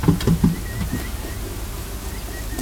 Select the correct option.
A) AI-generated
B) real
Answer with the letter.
B